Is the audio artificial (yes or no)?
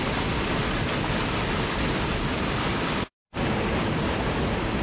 no